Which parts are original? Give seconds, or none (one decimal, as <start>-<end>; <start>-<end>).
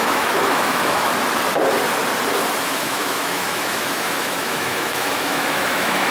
1.1-2.6